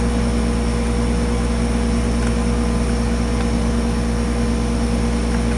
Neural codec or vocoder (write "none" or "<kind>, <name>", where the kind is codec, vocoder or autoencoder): none